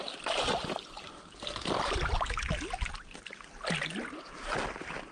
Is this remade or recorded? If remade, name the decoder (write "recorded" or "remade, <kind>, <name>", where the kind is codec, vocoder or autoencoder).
recorded